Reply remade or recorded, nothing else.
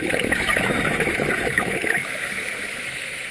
remade